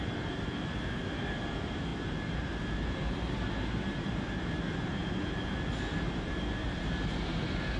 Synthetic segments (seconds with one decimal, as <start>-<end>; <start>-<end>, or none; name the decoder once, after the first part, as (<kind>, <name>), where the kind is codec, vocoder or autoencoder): 0.0-5.0 (vocoder, BigVGAN v2); 6.0-7.8